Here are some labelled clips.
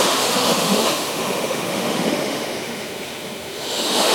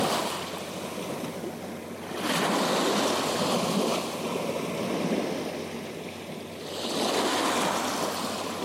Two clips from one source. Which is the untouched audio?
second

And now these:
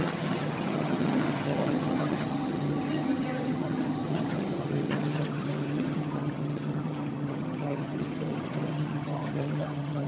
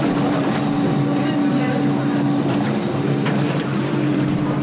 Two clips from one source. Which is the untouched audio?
second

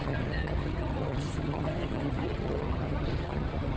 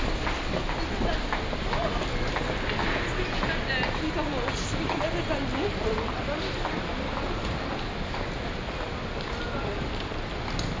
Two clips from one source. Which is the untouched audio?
second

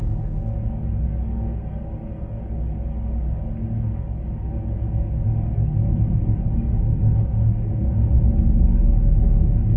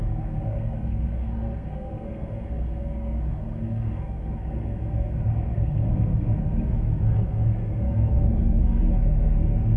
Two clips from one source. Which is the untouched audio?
first